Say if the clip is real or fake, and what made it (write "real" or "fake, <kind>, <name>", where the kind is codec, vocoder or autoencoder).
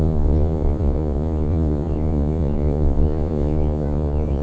fake, vocoder, Vocos